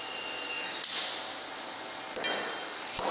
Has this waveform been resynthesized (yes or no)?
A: no